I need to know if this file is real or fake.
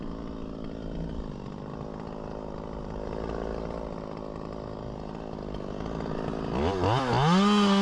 real